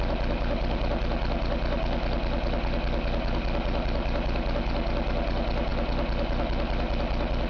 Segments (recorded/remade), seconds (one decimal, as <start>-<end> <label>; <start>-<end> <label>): 0.0-7.5 recorded